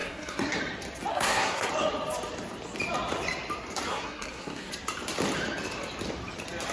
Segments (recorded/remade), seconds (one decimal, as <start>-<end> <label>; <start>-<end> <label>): 0.0-0.6 remade; 0.6-1.1 recorded; 1.1-1.7 remade; 1.7-3.9 recorded; 3.9-4.7 remade; 4.7-6.7 recorded